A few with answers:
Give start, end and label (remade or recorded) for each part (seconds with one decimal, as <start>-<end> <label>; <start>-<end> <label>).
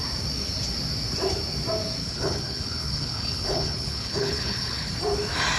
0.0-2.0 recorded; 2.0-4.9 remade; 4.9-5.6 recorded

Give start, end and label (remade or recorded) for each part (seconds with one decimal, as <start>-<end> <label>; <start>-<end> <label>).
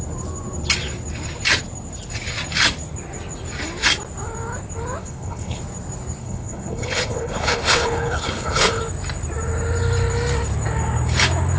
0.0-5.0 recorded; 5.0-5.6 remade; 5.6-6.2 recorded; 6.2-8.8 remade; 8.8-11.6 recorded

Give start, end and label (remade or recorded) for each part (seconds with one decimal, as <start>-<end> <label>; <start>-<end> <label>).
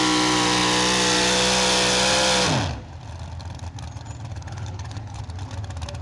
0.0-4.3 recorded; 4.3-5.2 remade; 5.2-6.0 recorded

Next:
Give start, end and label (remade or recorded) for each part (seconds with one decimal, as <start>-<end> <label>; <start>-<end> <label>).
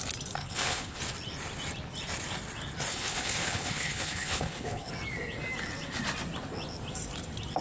0.0-0.4 recorded; 0.4-1.0 remade; 1.0-2.9 recorded; 2.9-4.9 remade; 4.9-7.6 recorded